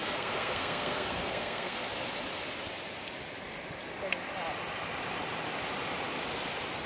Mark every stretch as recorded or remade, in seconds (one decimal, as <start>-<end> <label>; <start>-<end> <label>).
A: 0.0-1.8 remade; 1.8-6.9 recorded